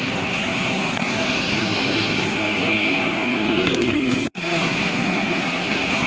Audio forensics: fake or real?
fake